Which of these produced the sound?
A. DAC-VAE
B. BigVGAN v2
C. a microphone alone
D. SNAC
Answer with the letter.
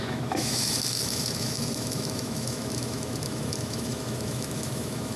A